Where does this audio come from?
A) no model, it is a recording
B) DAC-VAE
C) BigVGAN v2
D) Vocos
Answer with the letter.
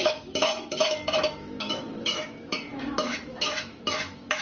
B